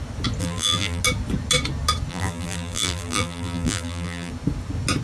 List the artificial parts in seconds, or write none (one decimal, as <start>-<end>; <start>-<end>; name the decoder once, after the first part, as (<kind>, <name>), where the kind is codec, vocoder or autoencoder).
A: 0.4-1.0 (vocoder, BigVGAN v2); 2.1-4.3